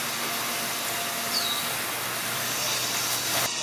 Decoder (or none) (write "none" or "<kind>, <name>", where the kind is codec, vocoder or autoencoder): none